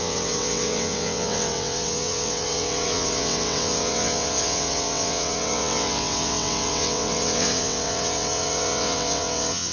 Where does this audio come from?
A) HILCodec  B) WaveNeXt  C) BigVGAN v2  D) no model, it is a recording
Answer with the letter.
B